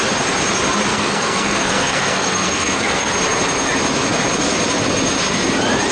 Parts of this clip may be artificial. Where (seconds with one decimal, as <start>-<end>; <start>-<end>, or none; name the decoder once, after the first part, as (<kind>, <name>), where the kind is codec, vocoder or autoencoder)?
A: 0.9-3.1 (codec, SNAC)